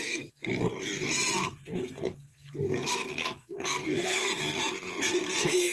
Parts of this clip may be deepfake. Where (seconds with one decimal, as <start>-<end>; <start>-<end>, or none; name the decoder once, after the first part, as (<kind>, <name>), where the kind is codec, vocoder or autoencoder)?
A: 0.0-0.5 (codec, SNAC); 1.4-4.3; 5.0-5.7